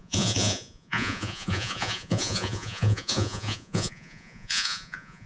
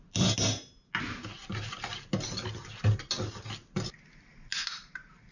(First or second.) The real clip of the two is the second